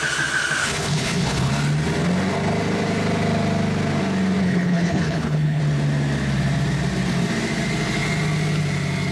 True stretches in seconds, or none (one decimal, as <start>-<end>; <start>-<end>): 0.0-0.6; 1.5-4.4; 5.6-9.1